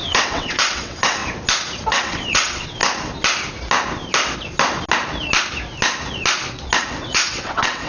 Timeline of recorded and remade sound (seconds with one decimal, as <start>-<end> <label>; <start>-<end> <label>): 0.0-1.2 remade; 1.2-1.9 recorded; 1.9-2.8 remade; 2.8-6.8 recorded; 6.8-7.9 remade